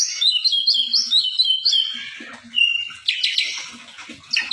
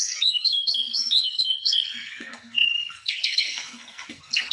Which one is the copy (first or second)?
second